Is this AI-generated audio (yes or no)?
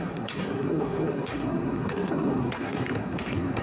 yes